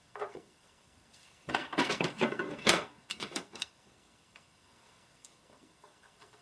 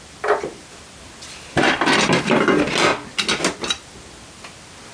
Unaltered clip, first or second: second